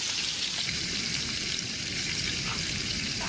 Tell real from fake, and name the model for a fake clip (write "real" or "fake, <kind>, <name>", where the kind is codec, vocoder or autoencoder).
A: fake, vocoder, BigVGAN v2